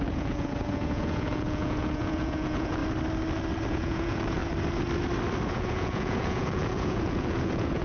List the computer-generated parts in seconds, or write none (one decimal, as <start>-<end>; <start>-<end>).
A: 0.0-2.8; 3.7-4.4; 5.5-7.8